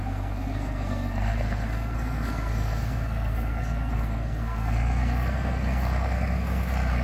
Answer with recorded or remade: remade